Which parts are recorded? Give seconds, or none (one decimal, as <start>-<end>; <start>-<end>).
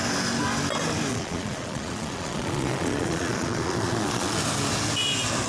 0.0-1.1; 4.4-5.5